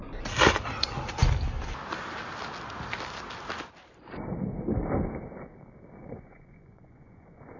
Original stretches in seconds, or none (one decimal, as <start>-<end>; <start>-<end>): 0.0-6.0